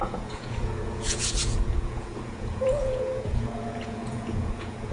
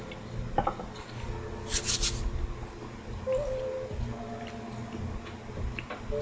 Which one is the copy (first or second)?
first